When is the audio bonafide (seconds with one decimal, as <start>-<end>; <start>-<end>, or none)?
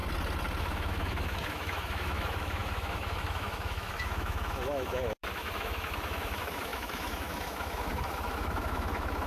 0.0-0.6